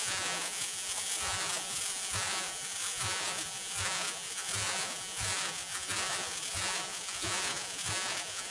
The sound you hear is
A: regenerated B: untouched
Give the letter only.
A